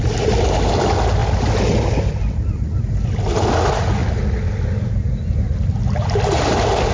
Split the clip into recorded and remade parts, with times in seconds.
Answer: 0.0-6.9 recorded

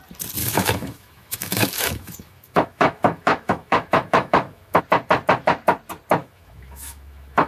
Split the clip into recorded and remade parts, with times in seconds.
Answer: 0.0-0.4 recorded; 0.4-4.8 remade; 4.8-6.2 recorded; 6.2-7.5 remade

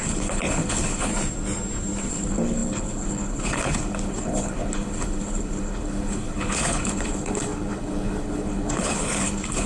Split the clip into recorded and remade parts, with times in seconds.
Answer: 0.0-1.1 remade; 1.1-2.1 recorded; 2.1-9.7 remade